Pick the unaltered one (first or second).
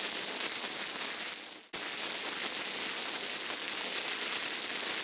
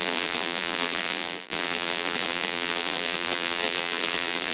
first